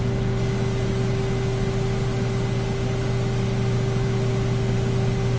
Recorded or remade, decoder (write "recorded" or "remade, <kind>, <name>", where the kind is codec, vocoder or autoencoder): recorded